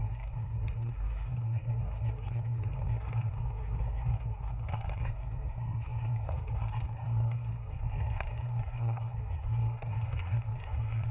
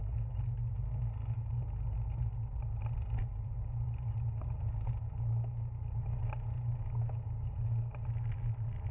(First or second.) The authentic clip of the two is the second